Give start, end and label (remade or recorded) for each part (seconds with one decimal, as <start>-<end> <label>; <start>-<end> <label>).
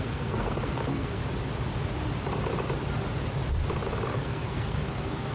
0.0-1.2 remade; 1.2-4.1 recorded; 4.1-5.3 remade